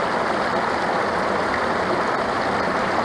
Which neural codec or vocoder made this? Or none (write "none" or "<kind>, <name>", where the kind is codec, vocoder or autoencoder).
none